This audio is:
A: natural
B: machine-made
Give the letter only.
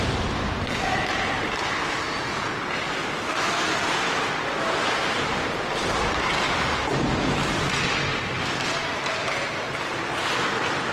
A